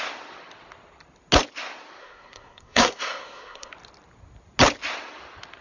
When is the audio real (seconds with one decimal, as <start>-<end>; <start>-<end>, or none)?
0.0-2.0; 3.7-5.6